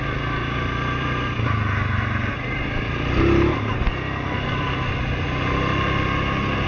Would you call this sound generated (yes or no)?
no